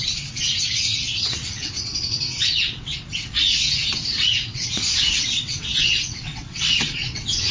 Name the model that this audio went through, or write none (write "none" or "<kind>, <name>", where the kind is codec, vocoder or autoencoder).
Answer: vocoder, WaveNeXt